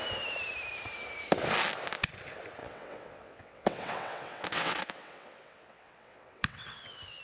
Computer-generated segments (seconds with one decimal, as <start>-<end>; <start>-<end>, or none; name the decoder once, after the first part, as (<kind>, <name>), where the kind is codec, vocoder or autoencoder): 2.6-7.2 (vocoder, WaveNeXt)

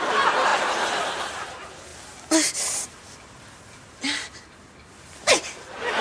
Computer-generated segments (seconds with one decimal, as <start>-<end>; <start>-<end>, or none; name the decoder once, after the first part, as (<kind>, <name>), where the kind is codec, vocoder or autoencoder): none

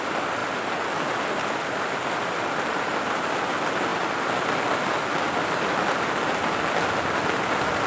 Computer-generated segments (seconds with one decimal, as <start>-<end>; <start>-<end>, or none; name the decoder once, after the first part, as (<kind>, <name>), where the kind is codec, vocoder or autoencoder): none

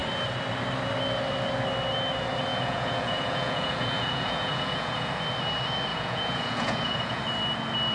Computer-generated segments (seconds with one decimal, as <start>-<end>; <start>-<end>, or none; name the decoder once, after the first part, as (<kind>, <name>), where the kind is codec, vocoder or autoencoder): 2.5-5.2 (vocoder, Vocos); 5.9-7.2

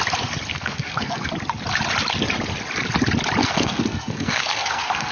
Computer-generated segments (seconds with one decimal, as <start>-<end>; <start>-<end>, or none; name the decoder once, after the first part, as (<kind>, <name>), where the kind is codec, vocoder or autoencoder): 0.5-1.3 (codec, SNAC); 3.4-5.1

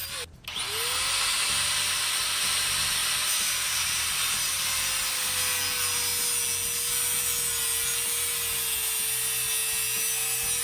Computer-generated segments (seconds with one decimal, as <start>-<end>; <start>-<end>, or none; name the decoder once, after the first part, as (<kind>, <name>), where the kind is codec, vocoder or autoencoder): none

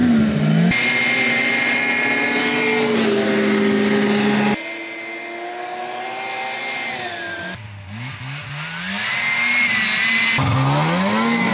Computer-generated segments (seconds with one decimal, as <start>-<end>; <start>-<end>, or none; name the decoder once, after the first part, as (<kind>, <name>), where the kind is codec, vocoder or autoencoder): none

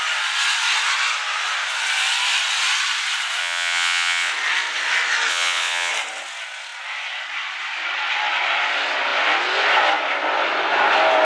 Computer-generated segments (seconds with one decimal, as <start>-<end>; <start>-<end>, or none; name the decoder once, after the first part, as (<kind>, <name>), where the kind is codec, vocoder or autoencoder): 3.4-4.3 (vocoder, WaveNeXt); 5.3-5.9